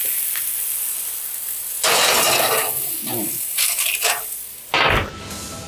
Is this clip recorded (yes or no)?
yes